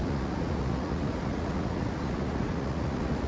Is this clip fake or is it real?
fake